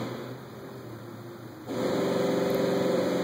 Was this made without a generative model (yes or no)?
yes